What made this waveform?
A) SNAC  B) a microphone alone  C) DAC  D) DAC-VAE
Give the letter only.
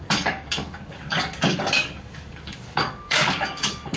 C